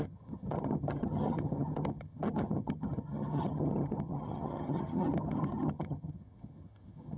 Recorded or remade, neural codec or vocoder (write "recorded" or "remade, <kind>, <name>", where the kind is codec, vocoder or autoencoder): remade, vocoder, HiFi-GAN